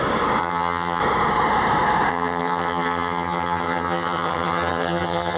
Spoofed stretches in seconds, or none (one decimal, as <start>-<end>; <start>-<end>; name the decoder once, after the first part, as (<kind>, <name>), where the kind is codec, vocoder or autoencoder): 0.4-1.0 (vocoder, HiFi-GAN); 2.1-5.4